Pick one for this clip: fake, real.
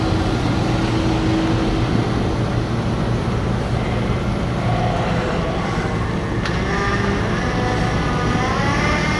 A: real